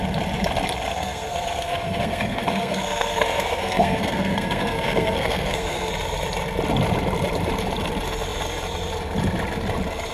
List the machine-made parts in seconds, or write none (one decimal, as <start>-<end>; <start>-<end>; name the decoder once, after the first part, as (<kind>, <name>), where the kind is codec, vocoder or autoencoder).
0.9-5.9 (codec, SNAC)

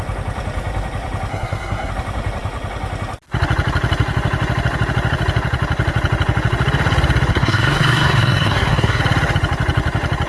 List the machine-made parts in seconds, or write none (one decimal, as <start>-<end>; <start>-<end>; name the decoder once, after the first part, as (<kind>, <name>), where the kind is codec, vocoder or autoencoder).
1.3-1.9 (codec, SNAC); 7.3-9.0

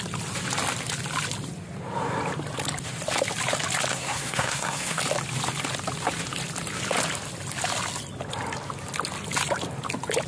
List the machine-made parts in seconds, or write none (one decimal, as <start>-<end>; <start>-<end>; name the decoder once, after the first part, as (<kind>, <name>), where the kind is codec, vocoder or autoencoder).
3.9-5.0 (codec, SNAC)